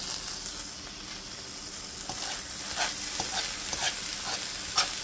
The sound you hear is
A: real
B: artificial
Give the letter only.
A